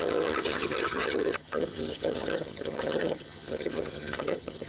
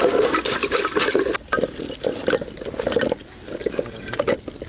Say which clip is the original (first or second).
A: second